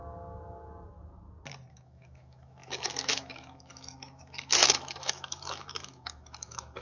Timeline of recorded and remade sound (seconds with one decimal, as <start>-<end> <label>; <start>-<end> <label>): 0.0-1.7 recorded; 1.7-6.8 remade